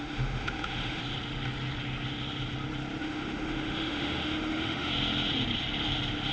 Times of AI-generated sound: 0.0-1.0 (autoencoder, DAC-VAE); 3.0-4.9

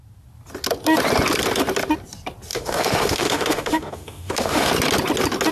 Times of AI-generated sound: 2.5-4.7 (autoencoder, DAC-VAE)

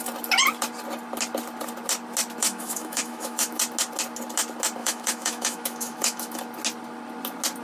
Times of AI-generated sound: 2.4-3.6 (autoencoder, DAC-VAE); 4.8-6.4

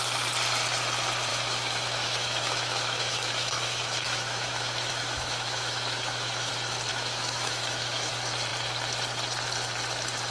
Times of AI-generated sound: 1.3-6.5 (autoencoder, DAC-VAE); 6.9-8.1

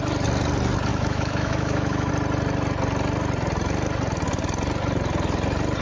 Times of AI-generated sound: 0.9-2.1 (autoencoder, DAC-VAE)